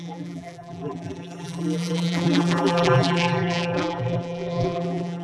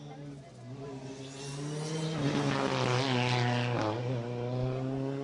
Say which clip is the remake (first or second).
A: first